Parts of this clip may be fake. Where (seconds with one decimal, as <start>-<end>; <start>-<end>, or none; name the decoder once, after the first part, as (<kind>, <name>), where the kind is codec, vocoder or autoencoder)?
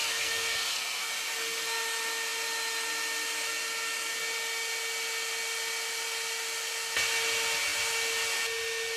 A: 0.0-1.1 (codec, SNAC)